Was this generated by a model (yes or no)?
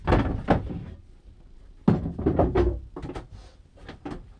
no